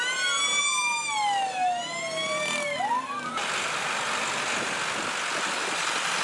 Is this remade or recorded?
recorded